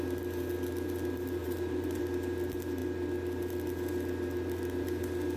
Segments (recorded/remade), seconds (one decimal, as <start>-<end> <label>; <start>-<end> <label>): 0.0-1.4 recorded; 1.4-2.0 remade; 2.0-5.4 recorded

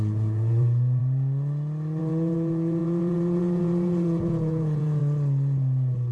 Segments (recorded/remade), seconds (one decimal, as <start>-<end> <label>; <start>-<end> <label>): 0.0-1.0 remade; 1.0-2.0 recorded; 2.0-5.0 remade; 5.0-6.1 recorded

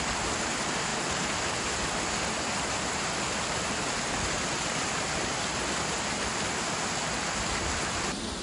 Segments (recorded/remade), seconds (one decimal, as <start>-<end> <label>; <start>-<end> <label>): 0.0-8.4 recorded

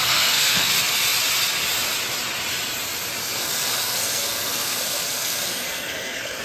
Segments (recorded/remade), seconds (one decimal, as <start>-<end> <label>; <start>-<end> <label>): 0.0-0.7 remade; 0.7-3.2 recorded; 3.2-6.4 remade

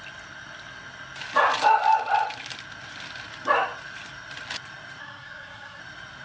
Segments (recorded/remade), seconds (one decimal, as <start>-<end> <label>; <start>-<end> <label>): 0.0-5.0 recorded; 5.0-5.8 remade; 5.8-6.2 recorded

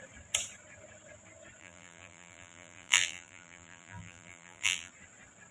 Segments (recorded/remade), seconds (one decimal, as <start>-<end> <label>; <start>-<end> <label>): 0.0-1.6 recorded; 1.6-4.9 remade; 4.9-5.5 recorded